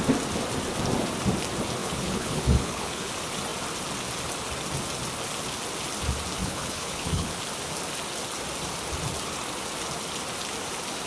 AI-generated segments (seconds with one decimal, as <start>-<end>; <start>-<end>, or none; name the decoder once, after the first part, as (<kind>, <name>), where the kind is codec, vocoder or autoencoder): 1.8-3.1 (codec, HILCodec); 6.4-7.4